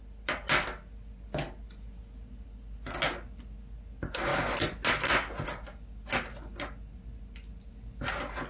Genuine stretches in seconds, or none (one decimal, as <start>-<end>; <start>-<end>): 0.0-8.5